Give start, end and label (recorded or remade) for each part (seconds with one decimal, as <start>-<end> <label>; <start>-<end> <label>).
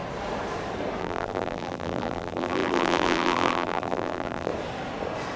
0.0-1.0 recorded; 1.0-4.5 remade; 4.5-5.4 recorded